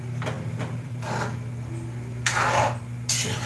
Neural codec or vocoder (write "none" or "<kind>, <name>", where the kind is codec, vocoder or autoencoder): none